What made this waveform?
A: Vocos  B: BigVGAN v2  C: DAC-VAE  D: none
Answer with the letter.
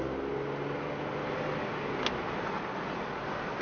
D